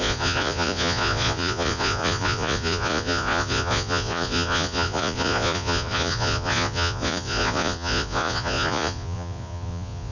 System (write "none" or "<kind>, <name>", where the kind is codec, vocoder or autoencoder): vocoder, Vocos